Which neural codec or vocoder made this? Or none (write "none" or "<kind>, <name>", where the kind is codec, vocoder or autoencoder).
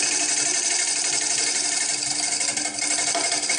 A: none